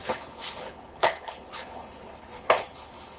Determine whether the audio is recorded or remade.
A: remade